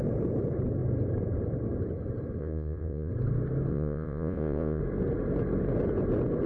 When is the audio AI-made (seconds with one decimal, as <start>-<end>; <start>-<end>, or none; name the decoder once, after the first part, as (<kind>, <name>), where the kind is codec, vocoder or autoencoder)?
2.4-3.1 (vocoder, Vocos); 3.7-4.8